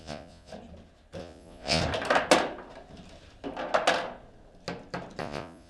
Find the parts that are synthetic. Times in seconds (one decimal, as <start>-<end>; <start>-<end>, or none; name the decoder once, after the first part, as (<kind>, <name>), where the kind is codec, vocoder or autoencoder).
0.0-0.5 (vocoder, Vocos); 1.2-1.8; 5.2-5.7

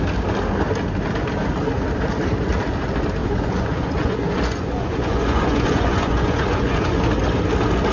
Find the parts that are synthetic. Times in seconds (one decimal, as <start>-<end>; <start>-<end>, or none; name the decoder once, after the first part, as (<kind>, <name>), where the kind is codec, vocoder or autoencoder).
3.2-7.0 (vocoder, Vocos)

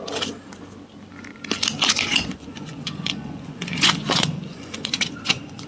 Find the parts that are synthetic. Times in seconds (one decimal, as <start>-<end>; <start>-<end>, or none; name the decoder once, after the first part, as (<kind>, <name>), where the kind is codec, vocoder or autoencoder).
2.1-5.7 (vocoder, Vocos)